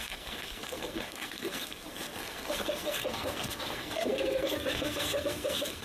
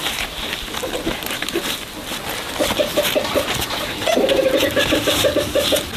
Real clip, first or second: second